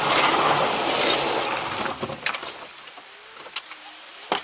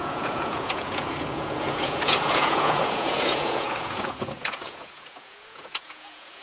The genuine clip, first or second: first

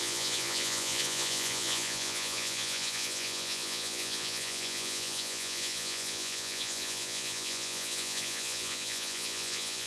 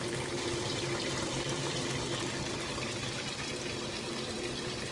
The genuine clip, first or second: second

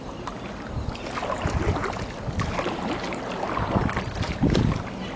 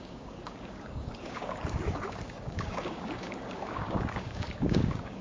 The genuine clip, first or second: first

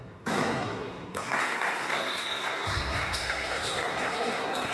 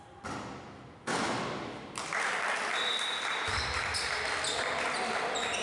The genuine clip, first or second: second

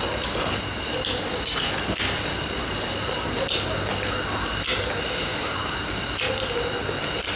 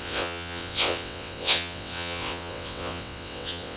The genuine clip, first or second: first